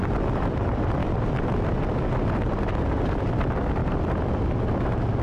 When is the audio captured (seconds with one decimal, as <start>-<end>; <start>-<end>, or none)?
1.0-2.6